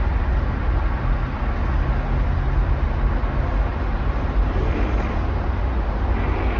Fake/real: real